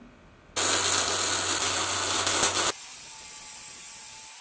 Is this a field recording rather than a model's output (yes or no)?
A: yes